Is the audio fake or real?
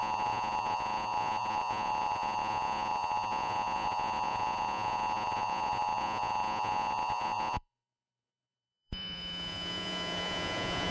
fake